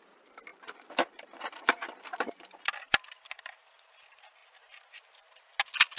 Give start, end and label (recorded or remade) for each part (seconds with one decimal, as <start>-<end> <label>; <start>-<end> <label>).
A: 0.0-0.5 recorded; 0.5-4.0 remade; 4.0-6.0 recorded

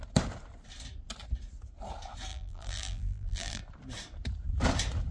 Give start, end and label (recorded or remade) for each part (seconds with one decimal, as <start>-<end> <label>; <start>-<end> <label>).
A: 0.0-2.3 recorded; 2.3-3.6 remade; 3.6-5.1 recorded

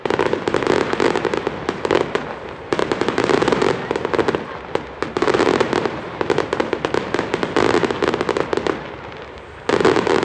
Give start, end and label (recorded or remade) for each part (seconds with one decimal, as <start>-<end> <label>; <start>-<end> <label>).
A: 0.0-10.2 recorded

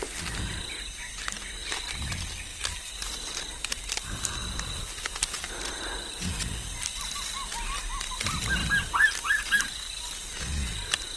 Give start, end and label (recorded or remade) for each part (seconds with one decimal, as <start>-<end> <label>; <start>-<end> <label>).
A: 0.0-1.6 recorded; 1.6-2.1 remade; 2.1-2.5 recorded; 2.5-3.9 remade; 3.9-8.6 recorded; 8.6-10.4 remade; 10.4-11.2 recorded